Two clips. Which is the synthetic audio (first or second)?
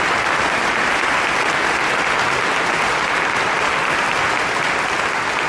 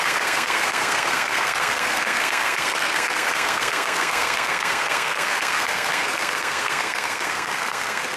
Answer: second